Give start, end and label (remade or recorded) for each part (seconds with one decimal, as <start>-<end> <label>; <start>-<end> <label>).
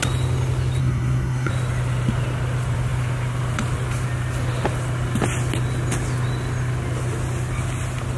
0.0-0.8 recorded; 0.8-1.5 remade; 1.5-8.2 recorded